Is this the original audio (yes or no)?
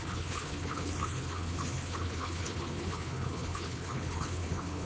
no